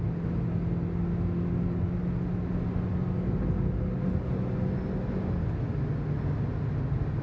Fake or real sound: real